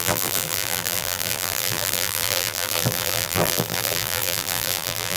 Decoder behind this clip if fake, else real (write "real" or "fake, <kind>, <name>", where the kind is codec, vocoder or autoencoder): fake, vocoder, BigVGAN v2